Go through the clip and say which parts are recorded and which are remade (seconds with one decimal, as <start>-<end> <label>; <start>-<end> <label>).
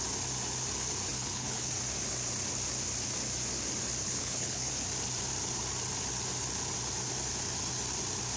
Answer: 0.0-1.1 recorded; 1.1-1.7 remade; 1.7-4.0 recorded; 4.0-4.7 remade; 4.7-8.4 recorded